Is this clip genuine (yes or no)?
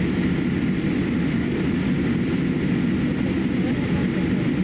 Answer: no